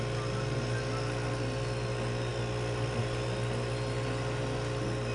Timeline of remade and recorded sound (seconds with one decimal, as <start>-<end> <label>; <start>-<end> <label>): 0.0-5.1 recorded